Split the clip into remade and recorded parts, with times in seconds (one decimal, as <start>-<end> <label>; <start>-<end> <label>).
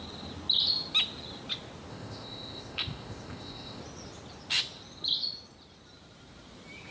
0.0-1.9 recorded; 1.9-3.8 remade; 3.8-6.9 recorded